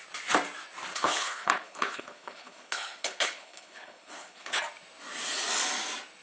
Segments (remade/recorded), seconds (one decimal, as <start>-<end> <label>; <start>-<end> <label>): 0.0-0.9 recorded; 0.9-4.6 remade; 4.6-6.2 recorded

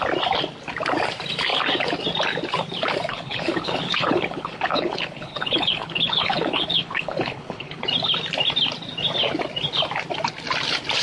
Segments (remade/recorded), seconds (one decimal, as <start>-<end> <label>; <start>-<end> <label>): 0.0-3.1 recorded; 3.1-7.8 remade; 7.8-11.0 recorded

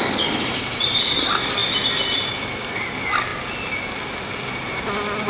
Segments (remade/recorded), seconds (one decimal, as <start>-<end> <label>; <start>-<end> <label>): 0.0-5.3 recorded

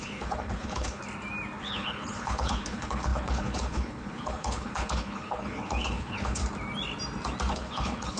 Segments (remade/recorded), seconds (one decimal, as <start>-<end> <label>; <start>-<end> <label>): 0.0-1.0 remade; 1.0-1.6 recorded; 1.6-6.4 remade; 6.4-7.5 recorded; 7.5-8.2 remade

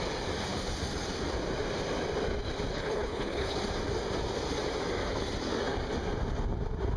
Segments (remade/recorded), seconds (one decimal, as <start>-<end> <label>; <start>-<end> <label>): 0.0-2.7 recorded; 2.7-3.6 remade; 3.6-7.0 recorded

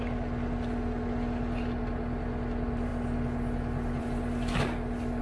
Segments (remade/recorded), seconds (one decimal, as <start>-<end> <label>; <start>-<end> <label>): 0.0-5.2 recorded

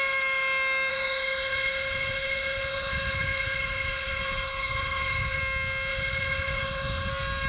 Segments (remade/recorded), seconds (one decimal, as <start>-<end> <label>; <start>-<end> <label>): 0.0-0.9 recorded; 0.9-5.4 remade; 5.4-5.9 recorded; 5.9-7.1 remade; 7.1-7.5 recorded

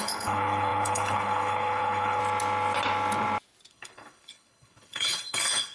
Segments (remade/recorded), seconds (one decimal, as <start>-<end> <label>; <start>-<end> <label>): 0.0-2.2 remade; 2.2-3.7 recorded; 3.7-5.7 remade